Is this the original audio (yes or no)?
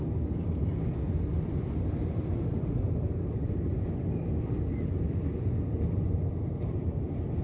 no